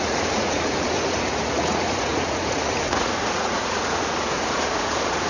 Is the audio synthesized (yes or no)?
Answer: yes